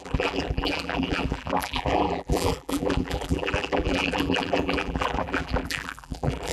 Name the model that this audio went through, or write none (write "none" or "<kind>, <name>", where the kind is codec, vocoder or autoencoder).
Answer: vocoder, BigVGAN v2